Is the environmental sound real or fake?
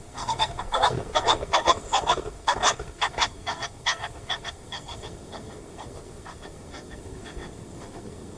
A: fake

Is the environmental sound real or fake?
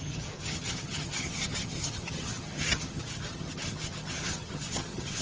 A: fake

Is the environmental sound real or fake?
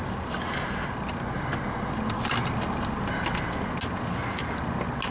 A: real